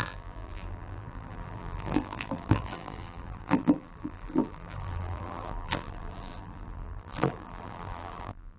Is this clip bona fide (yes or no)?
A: no